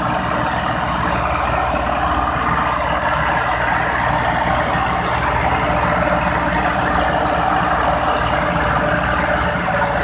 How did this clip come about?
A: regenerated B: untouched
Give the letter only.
B